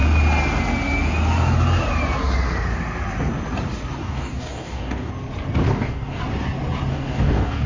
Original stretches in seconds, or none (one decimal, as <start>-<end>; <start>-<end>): 0.0-4.0; 5.1-5.7; 6.2-6.9